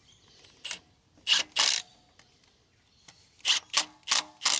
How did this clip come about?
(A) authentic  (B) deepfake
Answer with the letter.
A